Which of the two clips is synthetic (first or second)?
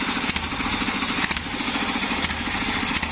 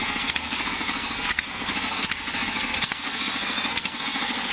second